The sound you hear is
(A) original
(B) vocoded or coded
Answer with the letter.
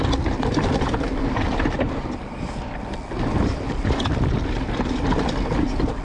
A